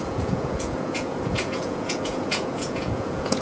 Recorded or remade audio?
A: remade